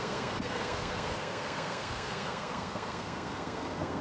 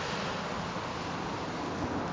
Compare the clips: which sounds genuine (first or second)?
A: second